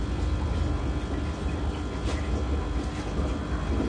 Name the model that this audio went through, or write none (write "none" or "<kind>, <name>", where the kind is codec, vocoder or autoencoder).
none